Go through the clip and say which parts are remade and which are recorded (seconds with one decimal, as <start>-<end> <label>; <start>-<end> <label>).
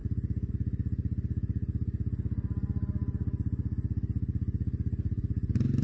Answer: 0.0-5.8 recorded